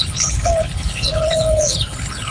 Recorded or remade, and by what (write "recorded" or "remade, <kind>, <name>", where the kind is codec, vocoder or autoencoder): remade, codec, HILCodec